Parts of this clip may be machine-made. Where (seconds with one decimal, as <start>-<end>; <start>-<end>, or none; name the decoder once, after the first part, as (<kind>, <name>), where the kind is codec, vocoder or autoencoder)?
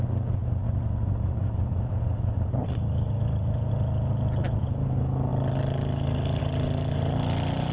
0.4-3.7 (vocoder, BigVGAN v2)